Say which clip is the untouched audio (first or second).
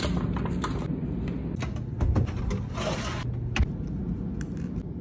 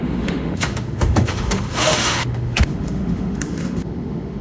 first